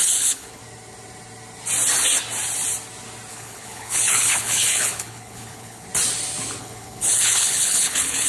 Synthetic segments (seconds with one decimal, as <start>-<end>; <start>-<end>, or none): 0.0-0.6; 3.3-5.9; 6.6-8.3